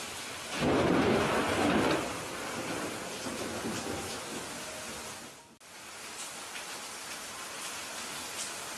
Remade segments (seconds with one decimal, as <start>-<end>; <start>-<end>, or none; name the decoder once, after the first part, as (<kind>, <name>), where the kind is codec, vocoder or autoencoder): none